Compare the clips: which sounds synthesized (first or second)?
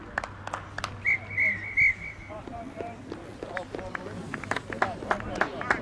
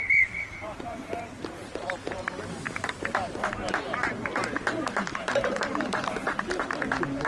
second